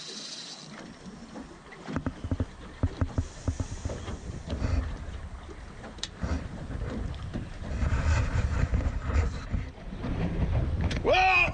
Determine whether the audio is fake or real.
fake